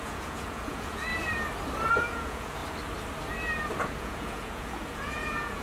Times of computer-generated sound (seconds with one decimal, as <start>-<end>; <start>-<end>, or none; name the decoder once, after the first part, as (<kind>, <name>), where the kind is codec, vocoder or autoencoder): 0.0-1.1 (vocoder, Vocos); 1.9-2.6; 3.8-5.6